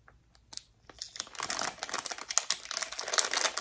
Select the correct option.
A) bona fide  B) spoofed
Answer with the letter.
A